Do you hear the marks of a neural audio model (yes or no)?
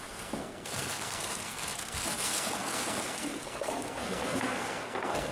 yes